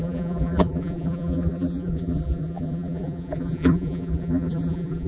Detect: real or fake fake